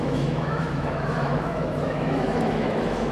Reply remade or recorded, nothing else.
remade